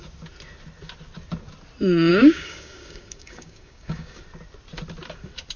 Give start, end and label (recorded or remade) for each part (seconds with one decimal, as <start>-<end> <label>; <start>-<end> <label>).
0.0-2.1 recorded; 2.1-4.2 remade; 4.2-5.6 recorded

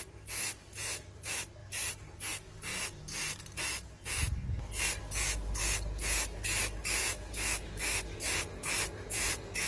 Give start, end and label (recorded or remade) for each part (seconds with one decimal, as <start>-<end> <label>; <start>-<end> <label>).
0.0-7.0 recorded; 7.0-8.0 remade; 8.0-9.7 recorded

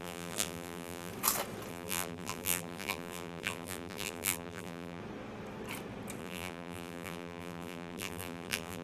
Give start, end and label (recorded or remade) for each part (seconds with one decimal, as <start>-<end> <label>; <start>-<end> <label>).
0.0-1.1 remade; 1.1-1.7 recorded; 1.7-5.0 remade; 5.0-6.2 recorded; 6.2-8.8 remade

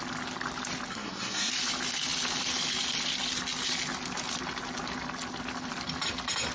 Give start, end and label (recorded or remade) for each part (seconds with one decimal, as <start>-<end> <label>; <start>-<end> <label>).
0.0-0.9 recorded; 0.9-1.5 remade; 1.5-6.5 recorded

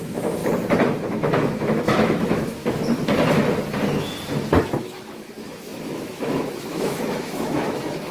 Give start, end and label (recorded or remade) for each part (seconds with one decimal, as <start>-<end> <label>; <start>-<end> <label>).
0.0-0.4 remade; 0.4-1.1 recorded; 1.1-2.6 remade; 2.6-4.8 recorded; 4.8-8.1 remade